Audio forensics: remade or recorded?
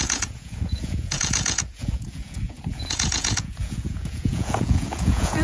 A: remade